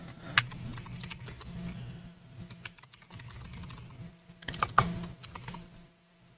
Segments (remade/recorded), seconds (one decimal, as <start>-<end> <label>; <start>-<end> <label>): 0.0-6.4 recorded

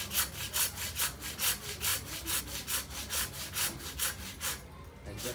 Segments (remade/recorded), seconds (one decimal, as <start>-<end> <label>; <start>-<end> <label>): 0.0-1.9 recorded; 1.9-2.4 remade; 2.4-5.3 recorded

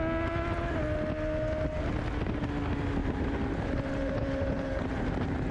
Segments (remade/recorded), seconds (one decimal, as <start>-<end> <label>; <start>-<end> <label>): 0.0-3.0 recorded; 3.0-5.5 remade

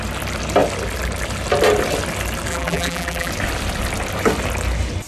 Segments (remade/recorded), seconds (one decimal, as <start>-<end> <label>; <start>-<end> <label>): 0.0-2.5 recorded; 2.5-3.3 remade; 3.3-5.1 recorded

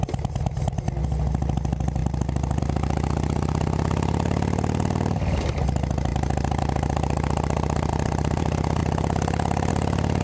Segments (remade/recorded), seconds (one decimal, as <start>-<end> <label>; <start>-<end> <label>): 0.0-2.0 recorded; 2.0-2.6 remade; 2.6-7.9 recorded; 7.9-8.4 remade; 8.4-10.2 recorded

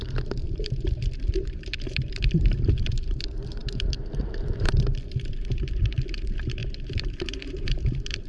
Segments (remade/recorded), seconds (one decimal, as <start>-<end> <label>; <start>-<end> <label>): 0.0-8.3 remade

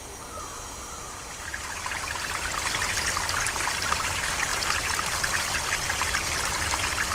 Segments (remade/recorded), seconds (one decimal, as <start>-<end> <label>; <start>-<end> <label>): 0.0-4.5 recorded; 4.5-5.0 remade; 5.0-7.1 recorded